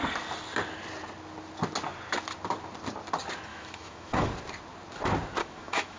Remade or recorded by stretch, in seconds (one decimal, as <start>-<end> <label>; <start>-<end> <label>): 0.0-3.5 recorded; 3.5-4.3 remade; 4.3-5.4 recorded; 5.4-6.0 remade